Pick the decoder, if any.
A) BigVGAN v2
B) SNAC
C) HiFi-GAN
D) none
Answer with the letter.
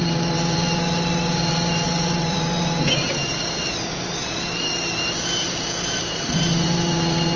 A